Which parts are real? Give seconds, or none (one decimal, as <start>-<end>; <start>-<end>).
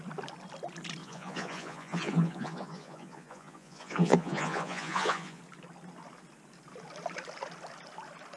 0.0-1.0; 5.4-8.4